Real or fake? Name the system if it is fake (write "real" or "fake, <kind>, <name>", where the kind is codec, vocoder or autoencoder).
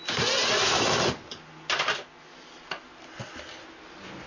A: real